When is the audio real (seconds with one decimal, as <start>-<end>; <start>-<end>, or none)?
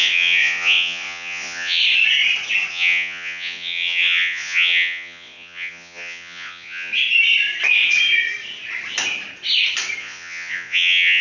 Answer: 1.8-2.7; 6.9-10.0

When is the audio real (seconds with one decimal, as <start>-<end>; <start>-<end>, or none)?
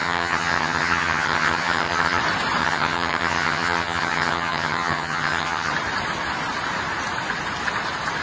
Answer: 2.2-2.6; 5.7-8.2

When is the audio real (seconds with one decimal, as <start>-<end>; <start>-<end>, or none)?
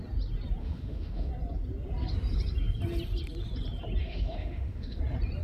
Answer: 0.0-0.6; 1.3-4.0; 5.0-5.4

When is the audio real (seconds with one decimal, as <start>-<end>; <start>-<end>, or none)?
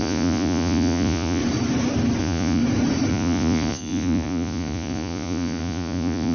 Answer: 1.4-2.2; 2.6-3.1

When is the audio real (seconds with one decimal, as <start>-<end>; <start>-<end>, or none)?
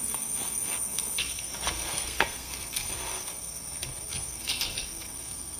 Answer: none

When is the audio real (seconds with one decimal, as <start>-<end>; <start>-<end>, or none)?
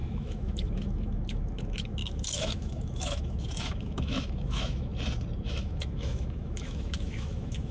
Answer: 4.9-5.4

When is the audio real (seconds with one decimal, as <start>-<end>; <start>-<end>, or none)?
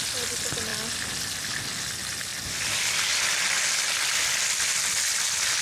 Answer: 0.0-5.6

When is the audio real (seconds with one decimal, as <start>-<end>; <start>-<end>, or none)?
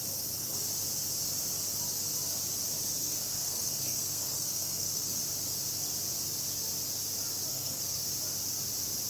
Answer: 0.0-3.0; 5.2-7.5; 8.0-9.1